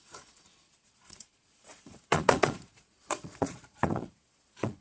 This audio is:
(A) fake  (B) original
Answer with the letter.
A